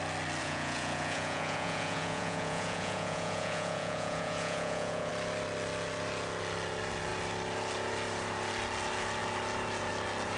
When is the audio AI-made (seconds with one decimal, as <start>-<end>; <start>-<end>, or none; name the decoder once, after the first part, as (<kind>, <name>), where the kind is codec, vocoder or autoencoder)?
0.4-5.1 (vocoder, Vocos)